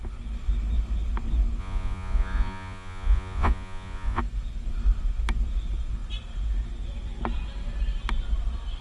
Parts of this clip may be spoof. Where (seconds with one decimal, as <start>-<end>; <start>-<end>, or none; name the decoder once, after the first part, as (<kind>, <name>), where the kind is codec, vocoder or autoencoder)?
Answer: 1.6-4.2 (vocoder, Vocos)